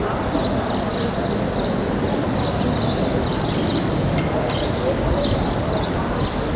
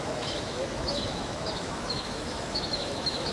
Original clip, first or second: first